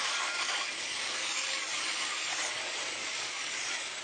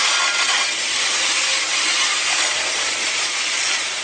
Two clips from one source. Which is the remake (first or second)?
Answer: first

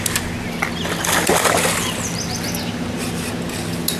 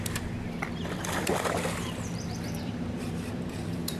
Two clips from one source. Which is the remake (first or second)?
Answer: second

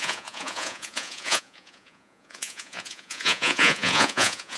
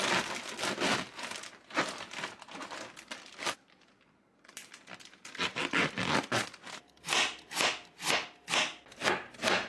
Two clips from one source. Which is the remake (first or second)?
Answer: first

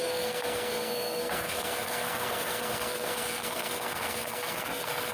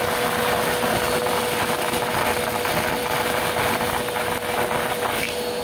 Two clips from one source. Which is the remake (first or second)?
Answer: first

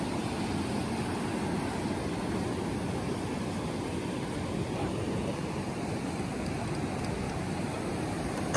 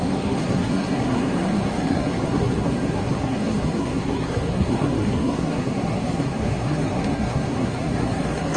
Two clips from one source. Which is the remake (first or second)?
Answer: second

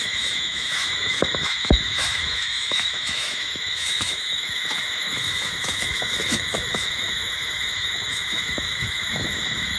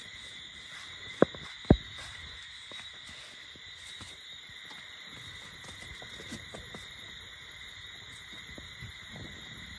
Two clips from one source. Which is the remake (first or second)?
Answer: first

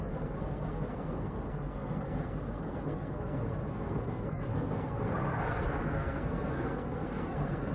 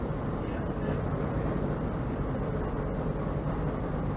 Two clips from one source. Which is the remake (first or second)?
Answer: first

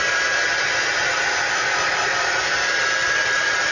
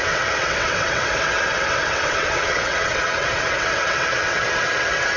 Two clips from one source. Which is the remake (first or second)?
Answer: second